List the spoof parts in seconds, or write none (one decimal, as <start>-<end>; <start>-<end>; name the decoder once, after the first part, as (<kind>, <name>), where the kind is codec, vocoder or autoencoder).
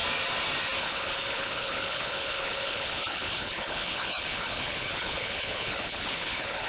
0.8-6.7 (codec, HILCodec)